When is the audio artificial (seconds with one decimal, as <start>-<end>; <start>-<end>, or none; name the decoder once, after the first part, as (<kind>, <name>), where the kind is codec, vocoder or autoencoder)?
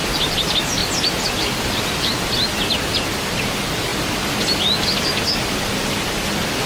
none